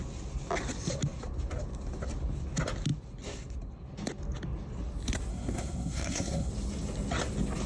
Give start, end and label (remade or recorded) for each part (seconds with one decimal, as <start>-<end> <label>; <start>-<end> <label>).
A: 0.0-5.3 recorded; 5.3-6.5 remade; 6.5-7.7 recorded